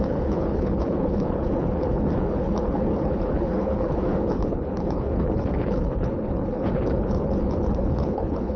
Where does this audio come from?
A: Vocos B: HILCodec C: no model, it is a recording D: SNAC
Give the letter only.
B